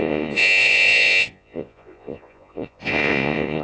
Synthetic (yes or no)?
yes